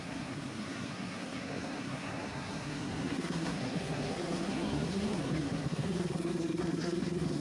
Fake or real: fake